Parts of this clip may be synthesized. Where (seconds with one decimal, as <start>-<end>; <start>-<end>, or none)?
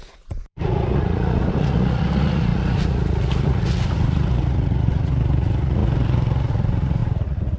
0.0-7.6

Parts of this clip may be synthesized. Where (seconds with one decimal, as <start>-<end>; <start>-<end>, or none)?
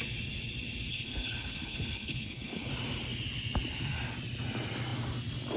0.9-2.7